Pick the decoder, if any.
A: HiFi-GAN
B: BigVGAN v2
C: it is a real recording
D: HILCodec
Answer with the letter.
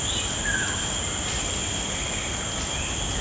C